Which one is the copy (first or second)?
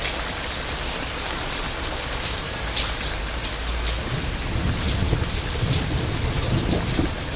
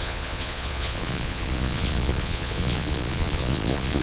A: second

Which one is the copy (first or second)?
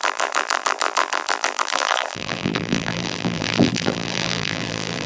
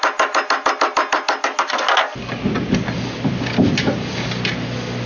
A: first